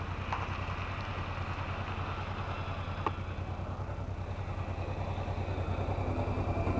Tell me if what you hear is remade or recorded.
recorded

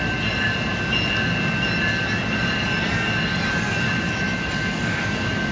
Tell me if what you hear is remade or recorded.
recorded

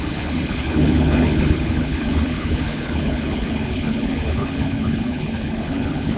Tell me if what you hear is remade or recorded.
remade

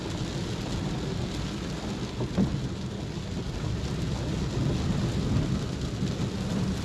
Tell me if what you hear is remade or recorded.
recorded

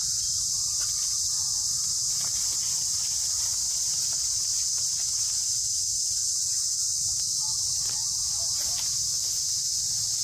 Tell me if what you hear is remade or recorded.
recorded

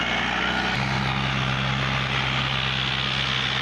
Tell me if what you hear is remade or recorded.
recorded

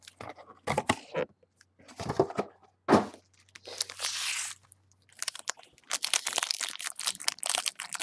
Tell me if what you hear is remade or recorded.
recorded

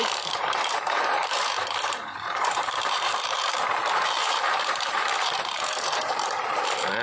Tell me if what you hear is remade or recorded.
remade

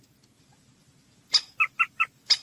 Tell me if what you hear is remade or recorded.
recorded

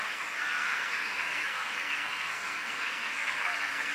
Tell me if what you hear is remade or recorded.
remade